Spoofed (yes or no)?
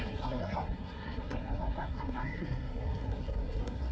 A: yes